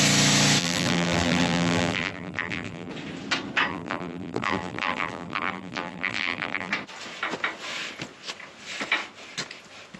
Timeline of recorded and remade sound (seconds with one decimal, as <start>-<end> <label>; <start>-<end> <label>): 0.0-0.6 recorded; 0.6-2.9 remade; 2.9-3.7 recorded; 3.7-6.7 remade; 6.7-10.0 recorded